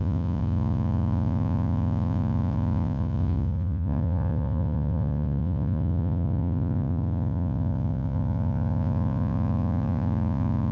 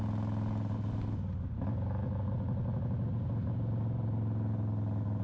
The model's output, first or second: first